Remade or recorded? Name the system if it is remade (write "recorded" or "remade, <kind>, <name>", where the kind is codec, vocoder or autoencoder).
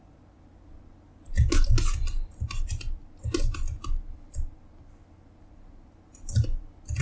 recorded